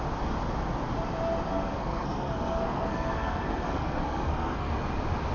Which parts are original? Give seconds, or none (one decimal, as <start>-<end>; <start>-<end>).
0.0-1.5; 4.7-5.3